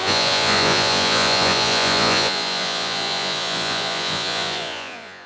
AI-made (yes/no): yes